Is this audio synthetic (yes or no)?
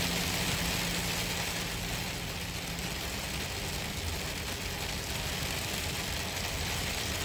no